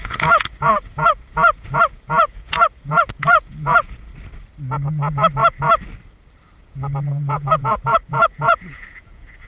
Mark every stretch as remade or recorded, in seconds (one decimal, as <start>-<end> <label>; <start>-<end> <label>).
0.0-4.1 remade; 4.1-6.6 recorded; 6.6-9.5 remade

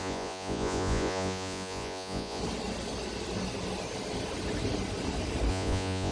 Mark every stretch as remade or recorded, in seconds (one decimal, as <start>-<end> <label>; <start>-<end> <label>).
0.0-2.4 remade; 2.4-5.5 recorded; 5.5-6.1 remade

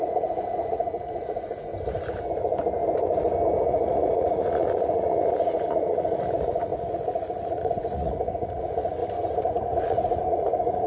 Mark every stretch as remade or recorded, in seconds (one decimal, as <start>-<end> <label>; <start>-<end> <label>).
0.0-1.7 remade; 1.7-3.6 recorded; 3.6-9.0 remade; 9.0-9.5 recorded; 9.5-10.9 remade

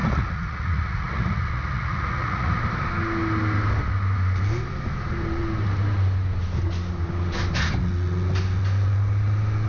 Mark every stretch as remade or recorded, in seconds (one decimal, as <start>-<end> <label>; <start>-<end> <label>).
0.0-2.6 remade; 2.6-9.7 recorded

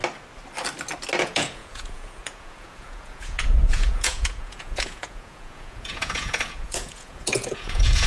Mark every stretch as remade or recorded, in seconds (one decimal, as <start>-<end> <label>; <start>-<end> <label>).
0.0-1.2 recorded; 1.2-8.1 remade

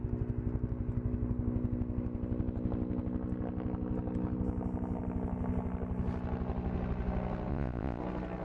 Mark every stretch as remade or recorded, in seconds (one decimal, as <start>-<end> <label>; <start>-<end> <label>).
0.0-7.5 recorded; 7.5-8.0 remade; 8.0-8.4 recorded

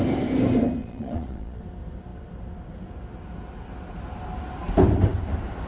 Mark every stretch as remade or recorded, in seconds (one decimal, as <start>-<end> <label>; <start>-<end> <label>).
0.0-0.8 recorded; 0.8-1.6 remade; 1.6-5.7 recorded

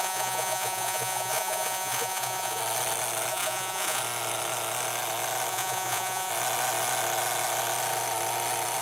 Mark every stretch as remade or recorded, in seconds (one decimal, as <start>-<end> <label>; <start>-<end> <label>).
0.0-2.6 remade; 2.6-3.3 recorded; 3.3-4.0 remade; 4.0-5.5 recorded; 5.5-6.3 remade; 6.3-8.8 recorded